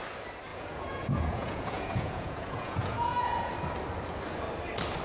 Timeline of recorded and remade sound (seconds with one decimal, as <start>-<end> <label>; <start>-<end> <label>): 0.0-0.5 recorded; 0.5-3.5 remade; 3.5-5.0 recorded